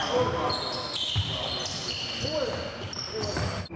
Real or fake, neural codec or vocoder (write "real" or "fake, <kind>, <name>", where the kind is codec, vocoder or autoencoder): real